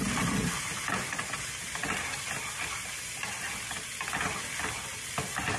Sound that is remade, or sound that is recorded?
recorded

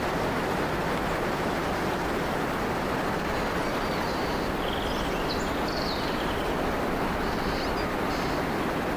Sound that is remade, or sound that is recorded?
recorded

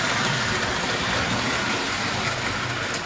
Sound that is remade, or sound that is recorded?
recorded